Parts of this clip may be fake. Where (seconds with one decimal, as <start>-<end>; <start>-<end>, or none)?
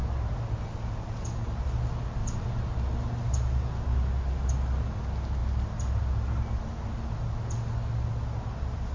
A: none